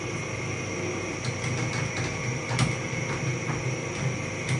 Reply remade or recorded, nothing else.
recorded